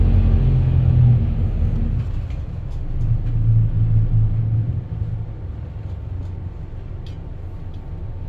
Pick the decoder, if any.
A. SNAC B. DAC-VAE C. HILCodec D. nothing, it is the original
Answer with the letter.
D